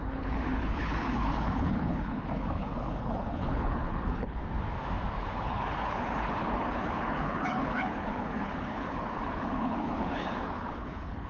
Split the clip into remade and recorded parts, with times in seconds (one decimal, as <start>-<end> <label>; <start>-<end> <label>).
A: 0.0-4.4 remade; 4.4-5.1 recorded; 5.1-11.3 remade